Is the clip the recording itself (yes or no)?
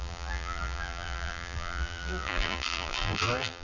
no